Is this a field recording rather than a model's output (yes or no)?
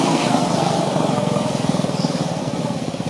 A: no